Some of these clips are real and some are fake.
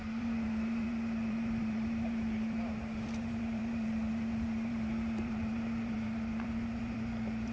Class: fake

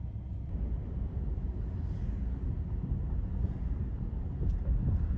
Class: real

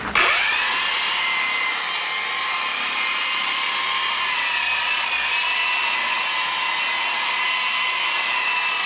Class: real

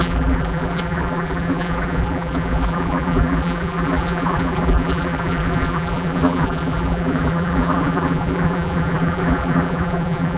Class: fake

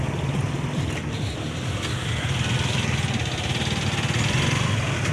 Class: real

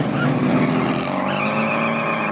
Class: real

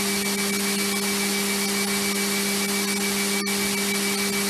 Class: real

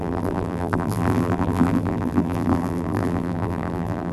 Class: fake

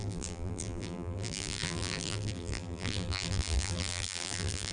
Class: fake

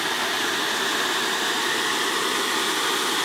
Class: fake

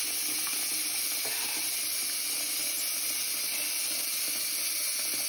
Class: real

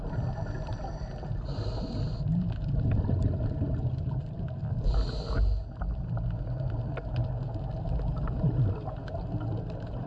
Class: real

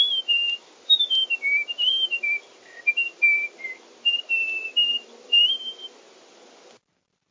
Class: real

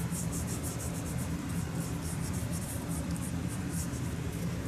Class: fake